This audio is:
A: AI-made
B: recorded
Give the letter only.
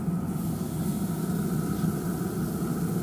B